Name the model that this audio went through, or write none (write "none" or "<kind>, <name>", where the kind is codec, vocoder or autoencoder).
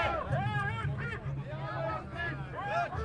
none